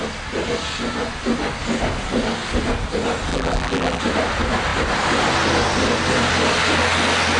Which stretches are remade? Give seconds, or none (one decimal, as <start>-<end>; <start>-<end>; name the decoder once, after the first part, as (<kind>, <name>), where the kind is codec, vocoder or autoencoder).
3.3-4.0 (vocoder, BigVGAN v2)